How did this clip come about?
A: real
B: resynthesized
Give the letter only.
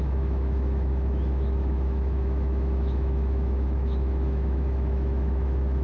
B